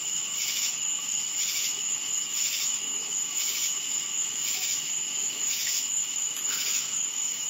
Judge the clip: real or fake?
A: fake